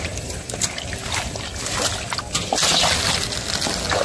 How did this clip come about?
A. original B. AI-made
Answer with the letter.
A